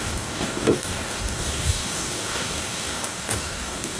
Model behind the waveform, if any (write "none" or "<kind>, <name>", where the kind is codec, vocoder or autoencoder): codec, DAC